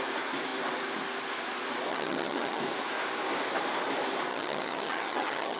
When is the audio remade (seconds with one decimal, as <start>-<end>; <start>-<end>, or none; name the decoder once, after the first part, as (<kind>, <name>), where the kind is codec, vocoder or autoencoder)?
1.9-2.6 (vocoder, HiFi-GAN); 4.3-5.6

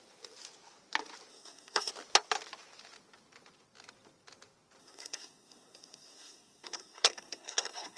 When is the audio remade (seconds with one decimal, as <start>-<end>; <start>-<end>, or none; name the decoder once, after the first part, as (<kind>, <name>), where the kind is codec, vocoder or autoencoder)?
1.3-1.9 (codec, SNAC); 4.8-8.0

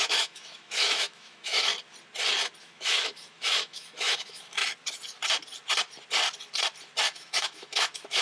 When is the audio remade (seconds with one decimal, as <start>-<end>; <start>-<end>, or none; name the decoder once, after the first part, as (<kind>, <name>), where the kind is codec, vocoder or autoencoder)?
0.0-1.7 (autoencoder, DAC-VAE); 2.6-4.6; 7.0-8.2